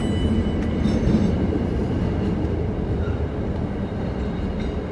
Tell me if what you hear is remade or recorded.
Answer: recorded